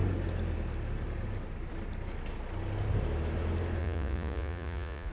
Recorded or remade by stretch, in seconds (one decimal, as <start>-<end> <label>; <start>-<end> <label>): 0.0-3.8 recorded; 3.8-5.1 remade